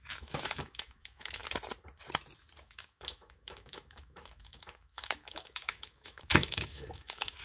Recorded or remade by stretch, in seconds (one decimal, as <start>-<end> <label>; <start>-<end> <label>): 0.0-1.4 remade; 1.4-2.6 recorded; 2.6-7.4 remade